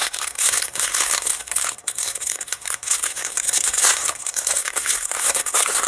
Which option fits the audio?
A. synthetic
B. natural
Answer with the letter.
A